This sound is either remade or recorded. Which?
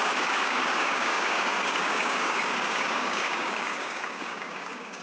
remade